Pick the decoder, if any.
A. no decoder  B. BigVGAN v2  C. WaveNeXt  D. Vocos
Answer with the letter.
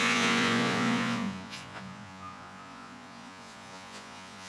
D